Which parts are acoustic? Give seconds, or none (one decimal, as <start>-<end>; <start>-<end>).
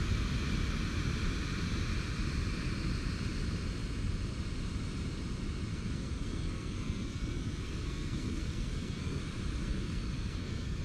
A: 0.0-5.7; 9.2-9.6